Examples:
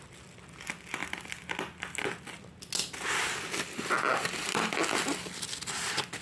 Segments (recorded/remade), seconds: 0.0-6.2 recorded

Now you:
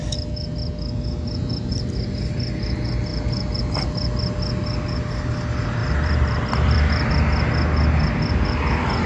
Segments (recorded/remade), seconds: 0.0-5.8 recorded; 5.8-7.1 remade; 7.1-9.1 recorded